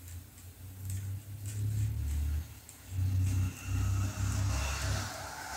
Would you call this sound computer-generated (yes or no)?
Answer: no